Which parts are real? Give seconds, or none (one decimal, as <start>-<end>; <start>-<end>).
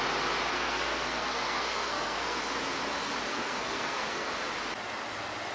0.0-0.5; 2.4-3.3; 4.3-5.5